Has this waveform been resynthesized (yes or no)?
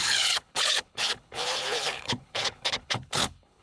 yes